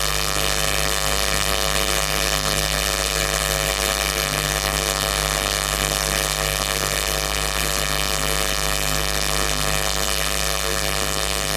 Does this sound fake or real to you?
fake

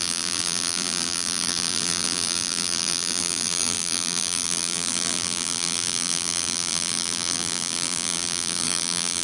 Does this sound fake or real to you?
fake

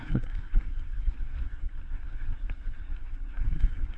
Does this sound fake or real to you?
fake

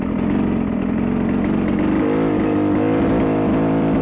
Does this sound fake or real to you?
real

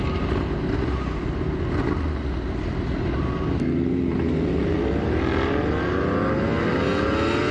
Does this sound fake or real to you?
real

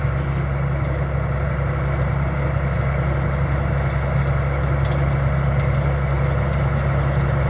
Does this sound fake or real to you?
real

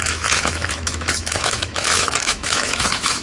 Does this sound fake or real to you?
fake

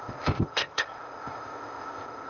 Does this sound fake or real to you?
fake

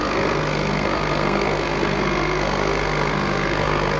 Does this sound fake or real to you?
fake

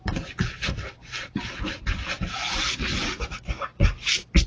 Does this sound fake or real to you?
real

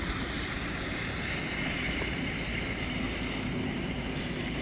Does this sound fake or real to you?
fake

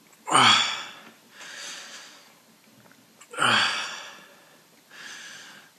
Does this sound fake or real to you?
real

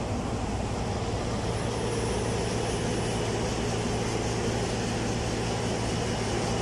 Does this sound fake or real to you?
real